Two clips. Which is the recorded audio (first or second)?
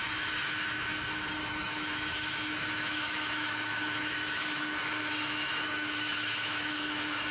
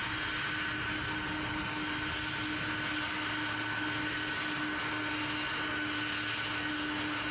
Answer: second